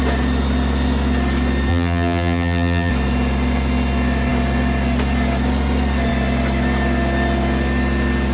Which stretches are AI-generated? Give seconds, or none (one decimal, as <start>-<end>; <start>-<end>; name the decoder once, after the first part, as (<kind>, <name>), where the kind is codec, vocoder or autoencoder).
1.7-2.9 (vocoder, BigVGAN v2)